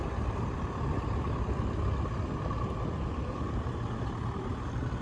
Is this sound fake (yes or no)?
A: no